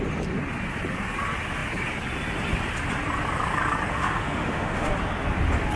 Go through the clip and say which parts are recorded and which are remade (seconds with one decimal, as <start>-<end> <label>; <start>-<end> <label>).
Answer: 0.0-3.9 recorded; 3.9-4.9 remade; 4.9-5.8 recorded